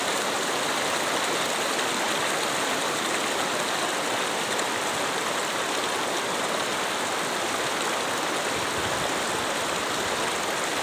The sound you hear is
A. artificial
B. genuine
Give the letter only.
B